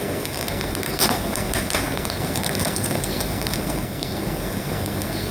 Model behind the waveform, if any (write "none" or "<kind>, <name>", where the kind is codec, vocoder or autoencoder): codec, SNAC